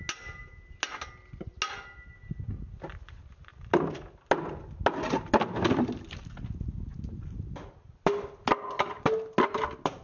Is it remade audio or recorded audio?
recorded